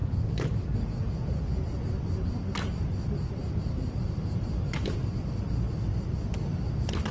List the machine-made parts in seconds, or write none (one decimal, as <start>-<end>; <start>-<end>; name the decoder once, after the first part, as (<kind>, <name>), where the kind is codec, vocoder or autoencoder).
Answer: 3.4-5.1 (vocoder, BigVGAN v2)